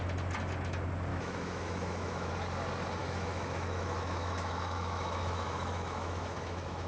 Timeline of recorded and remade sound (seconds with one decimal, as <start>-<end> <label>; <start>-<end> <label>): 0.0-1.1 recorded; 1.1-2.3 remade; 2.3-3.0 recorded; 3.0-6.9 remade

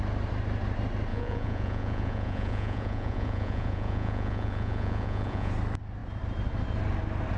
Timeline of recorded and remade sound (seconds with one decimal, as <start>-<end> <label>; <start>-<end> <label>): 0.0-1.1 recorded; 1.1-5.5 remade; 5.5-7.4 recorded

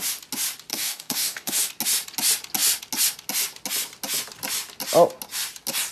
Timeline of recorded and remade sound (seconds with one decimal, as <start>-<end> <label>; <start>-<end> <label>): 0.0-0.7 recorded; 0.7-1.7 remade; 1.7-5.9 recorded

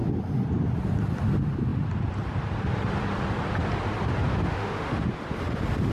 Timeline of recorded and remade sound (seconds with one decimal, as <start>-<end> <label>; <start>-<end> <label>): 0.0-4.4 recorded; 4.4-5.0 remade; 5.0-5.9 recorded

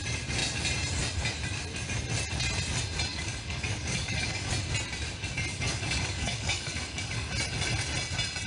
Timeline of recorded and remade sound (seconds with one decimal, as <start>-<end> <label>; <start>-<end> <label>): 0.0-3.1 recorded; 3.1-4.5 remade; 4.5-5.5 recorded; 5.5-7.3 remade; 7.3-8.5 recorded

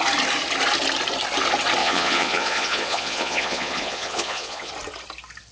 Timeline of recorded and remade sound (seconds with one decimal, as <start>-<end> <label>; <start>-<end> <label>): 0.0-1.8 recorded; 1.8-4.7 remade; 4.7-5.5 recorded

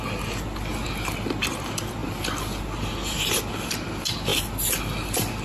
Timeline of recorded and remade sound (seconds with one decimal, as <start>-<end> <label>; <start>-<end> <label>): 0.0-5.4 recorded

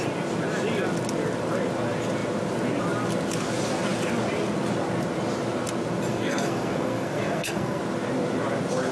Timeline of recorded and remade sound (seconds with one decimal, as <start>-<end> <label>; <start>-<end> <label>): 0.0-6.1 recorded; 6.1-7.8 remade; 7.8-8.9 recorded